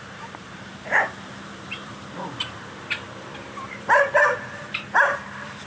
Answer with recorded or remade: remade